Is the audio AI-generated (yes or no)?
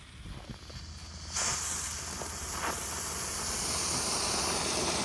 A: no